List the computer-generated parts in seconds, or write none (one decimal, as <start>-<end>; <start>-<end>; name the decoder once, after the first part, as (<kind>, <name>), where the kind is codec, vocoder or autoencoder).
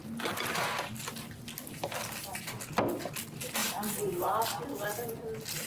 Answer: none